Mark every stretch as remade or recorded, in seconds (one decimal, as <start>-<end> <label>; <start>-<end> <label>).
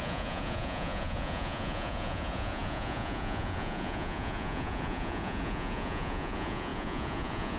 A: 0.0-7.6 remade